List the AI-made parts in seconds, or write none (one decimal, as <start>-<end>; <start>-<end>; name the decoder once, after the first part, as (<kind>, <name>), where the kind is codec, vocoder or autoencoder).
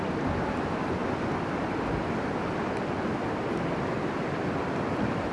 0.0-1.0 (vocoder, BigVGAN v2); 3.8-5.3